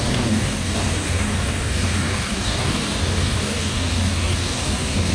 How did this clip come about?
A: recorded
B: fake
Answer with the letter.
B